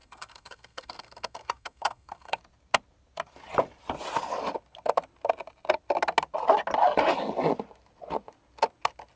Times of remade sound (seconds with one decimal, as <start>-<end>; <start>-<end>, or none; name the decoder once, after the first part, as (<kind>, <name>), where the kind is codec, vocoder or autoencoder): 0.0-2.4 (codec, SNAC)